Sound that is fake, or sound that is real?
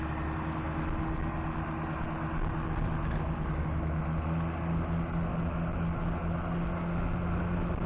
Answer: real